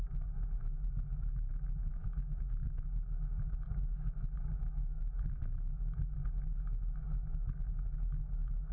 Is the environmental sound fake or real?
fake